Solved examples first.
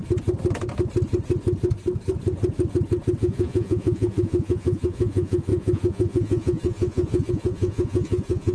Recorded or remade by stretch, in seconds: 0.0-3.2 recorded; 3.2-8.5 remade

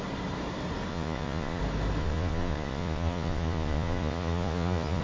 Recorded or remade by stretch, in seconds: 0.0-0.9 recorded; 0.9-1.6 remade; 1.6-2.0 recorded; 2.0-5.0 remade

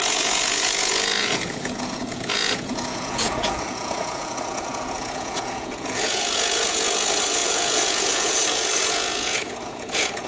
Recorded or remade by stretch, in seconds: 0.0-10.3 remade

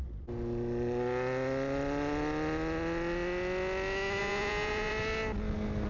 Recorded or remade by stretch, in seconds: 0.0-4.2 recorded; 4.2-4.9 remade; 4.9-5.9 recorded

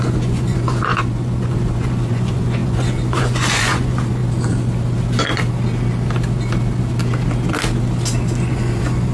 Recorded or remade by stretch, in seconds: 0.0-4.2 remade; 4.2-8.4 recorded; 8.4-9.1 remade

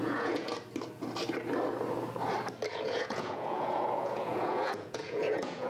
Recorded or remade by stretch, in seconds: 0.0-0.5 remade; 0.5-2.7 recorded; 2.7-5.7 remade